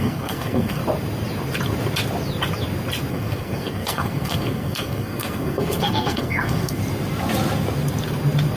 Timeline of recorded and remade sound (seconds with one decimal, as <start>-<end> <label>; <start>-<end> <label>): 0.0-0.8 remade; 0.8-3.1 recorded; 3.1-6.8 remade; 6.8-8.6 recorded

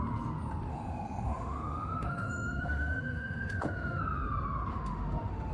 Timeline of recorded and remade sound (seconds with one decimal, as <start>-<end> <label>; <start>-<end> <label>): 0.0-0.7 recorded; 0.7-4.0 remade; 4.0-4.7 recorded; 4.7-5.5 remade

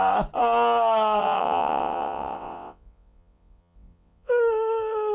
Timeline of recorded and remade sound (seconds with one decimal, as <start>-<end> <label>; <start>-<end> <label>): 0.0-1.2 recorded; 1.2-4.3 remade; 4.3-5.1 recorded

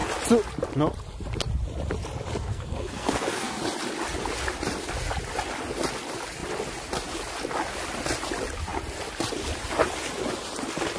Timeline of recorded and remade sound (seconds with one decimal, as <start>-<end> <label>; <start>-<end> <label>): 0.0-2.4 recorded; 2.4-3.6 remade; 3.6-11.0 recorded

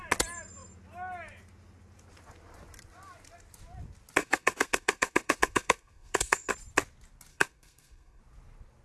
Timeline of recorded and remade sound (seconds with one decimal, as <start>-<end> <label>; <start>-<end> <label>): 0.0-4.2 recorded; 4.2-6.5 remade; 6.5-7.3 recorded; 7.3-8.2 remade; 8.2-8.8 recorded

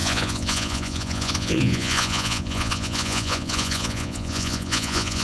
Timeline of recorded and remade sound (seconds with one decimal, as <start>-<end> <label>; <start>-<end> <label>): 0.0-5.2 remade

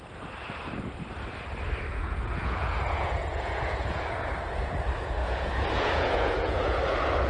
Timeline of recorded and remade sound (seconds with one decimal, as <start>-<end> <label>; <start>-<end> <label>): 0.0-1.9 recorded; 1.9-4.3 remade; 4.3-5.2 recorded; 5.2-6.8 remade; 6.8-7.3 recorded